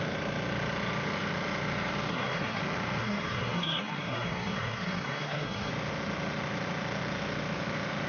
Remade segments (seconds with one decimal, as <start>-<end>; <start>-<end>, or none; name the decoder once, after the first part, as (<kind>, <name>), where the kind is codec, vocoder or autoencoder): 2.1-2.6 (codec, SNAC); 3.0-5.7